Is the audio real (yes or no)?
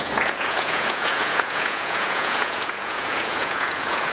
no